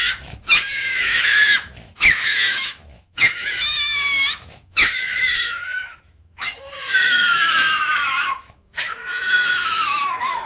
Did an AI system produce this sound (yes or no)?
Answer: yes